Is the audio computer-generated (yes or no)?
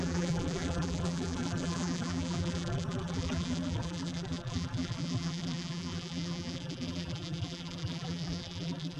yes